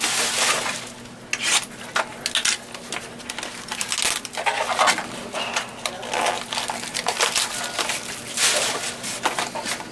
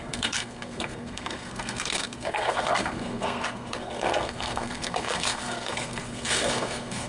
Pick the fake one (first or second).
second